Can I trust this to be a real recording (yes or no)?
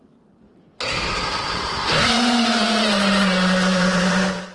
no